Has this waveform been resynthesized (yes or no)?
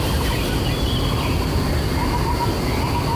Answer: no